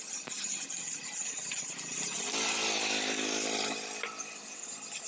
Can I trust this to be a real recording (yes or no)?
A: yes